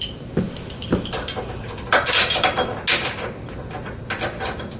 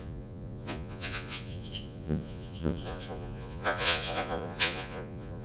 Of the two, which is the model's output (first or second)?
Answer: second